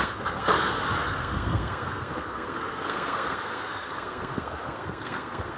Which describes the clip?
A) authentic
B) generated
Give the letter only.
B